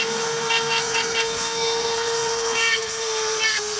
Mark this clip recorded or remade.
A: remade